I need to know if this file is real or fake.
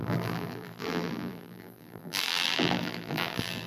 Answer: fake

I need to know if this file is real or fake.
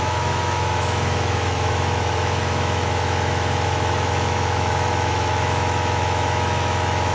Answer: fake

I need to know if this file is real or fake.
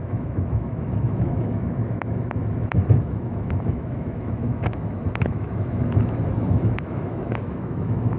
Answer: fake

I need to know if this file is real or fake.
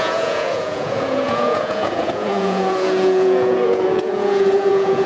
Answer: fake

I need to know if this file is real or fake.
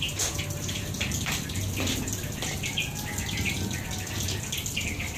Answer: real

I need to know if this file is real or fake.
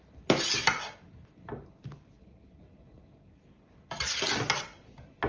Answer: real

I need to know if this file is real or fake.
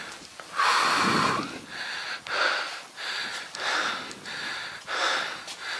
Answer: real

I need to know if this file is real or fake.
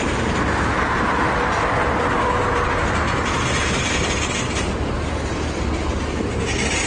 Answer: real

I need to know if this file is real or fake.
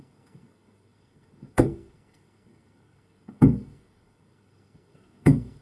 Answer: fake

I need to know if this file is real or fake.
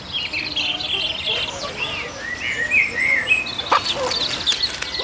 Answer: real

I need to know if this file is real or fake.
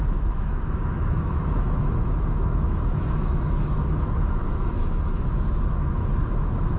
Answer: fake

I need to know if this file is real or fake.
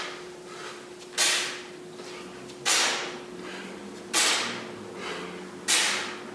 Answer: real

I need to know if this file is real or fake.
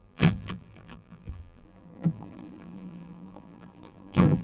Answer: fake